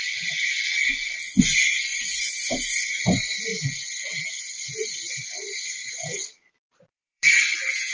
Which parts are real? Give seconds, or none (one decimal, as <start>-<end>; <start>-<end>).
0.0-1.9; 3.0-5.8; 7.3-7.9